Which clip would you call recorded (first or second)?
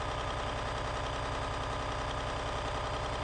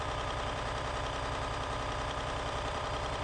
first